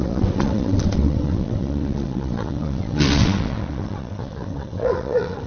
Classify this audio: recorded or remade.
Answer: remade